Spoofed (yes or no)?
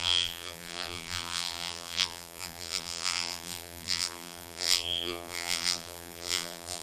yes